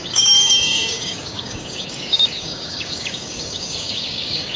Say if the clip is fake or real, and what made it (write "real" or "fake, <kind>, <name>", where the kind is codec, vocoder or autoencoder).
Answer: fake, codec, DAC